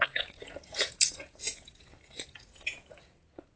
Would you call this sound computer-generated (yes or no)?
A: yes